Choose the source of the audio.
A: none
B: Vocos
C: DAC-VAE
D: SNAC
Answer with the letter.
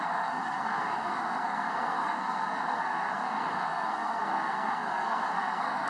D